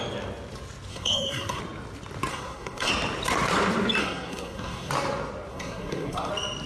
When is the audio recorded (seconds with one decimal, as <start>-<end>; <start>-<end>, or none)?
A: 0.0-0.9; 1.6-2.3; 2.9-4.0; 4.9-5.5; 6.3-6.7